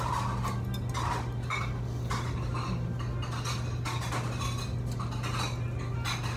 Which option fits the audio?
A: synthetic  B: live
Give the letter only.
B